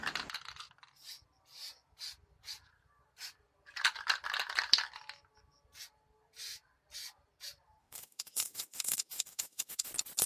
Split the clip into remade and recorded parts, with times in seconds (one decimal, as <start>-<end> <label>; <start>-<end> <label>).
0.0-7.8 recorded; 7.8-9.9 remade; 9.9-10.3 recorded